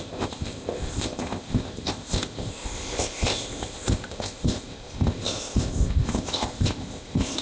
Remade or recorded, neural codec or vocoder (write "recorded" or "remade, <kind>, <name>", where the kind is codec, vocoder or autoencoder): remade, codec, ZipCodec